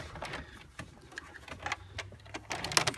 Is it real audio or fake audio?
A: real